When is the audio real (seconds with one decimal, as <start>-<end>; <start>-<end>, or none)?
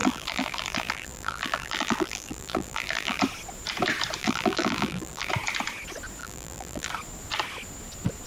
3.2-4.2; 5.3-6.2; 6.9-8.3